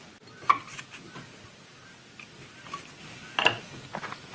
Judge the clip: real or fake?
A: real